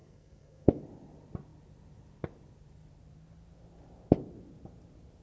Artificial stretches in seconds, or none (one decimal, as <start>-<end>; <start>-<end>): 0.0-0.8